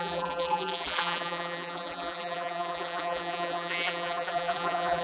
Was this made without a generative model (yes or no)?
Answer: no